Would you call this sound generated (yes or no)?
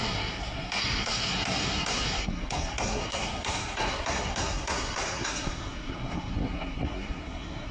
yes